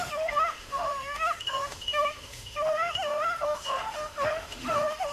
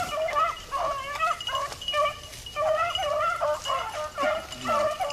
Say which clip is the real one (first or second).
second